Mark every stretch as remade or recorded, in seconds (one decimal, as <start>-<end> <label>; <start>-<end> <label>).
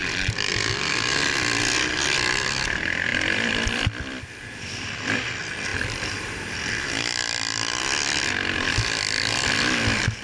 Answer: 0.0-0.5 remade; 0.5-3.1 recorded; 3.1-4.8 remade; 4.8-5.7 recorded; 5.7-7.8 remade; 7.8-10.2 recorded